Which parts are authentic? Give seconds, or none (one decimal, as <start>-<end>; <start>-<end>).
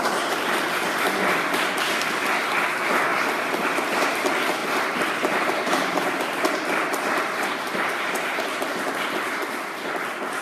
0.0-4.6; 8.4-10.4